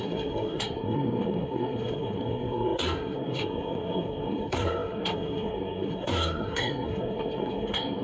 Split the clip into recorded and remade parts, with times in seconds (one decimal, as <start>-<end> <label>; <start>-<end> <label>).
0.0-8.0 remade